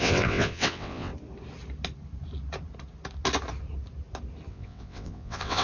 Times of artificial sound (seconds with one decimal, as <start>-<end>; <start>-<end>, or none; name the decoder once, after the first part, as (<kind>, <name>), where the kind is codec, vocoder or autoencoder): 0.0-1.1 (vocoder, WaveNeXt); 4.5-5.6